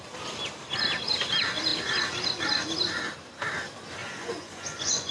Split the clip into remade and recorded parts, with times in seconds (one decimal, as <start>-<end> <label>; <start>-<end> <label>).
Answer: 0.0-4.0 recorded; 4.0-5.1 remade